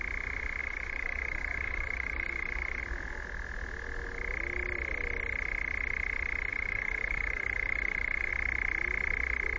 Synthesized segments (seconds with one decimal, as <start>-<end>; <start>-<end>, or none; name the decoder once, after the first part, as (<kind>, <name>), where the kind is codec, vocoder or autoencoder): 0.6-2.8 (codec, DAC); 6.5-8.3